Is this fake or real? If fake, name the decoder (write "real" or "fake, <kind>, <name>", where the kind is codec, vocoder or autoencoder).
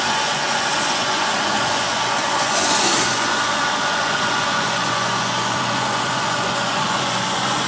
fake, vocoder, Vocos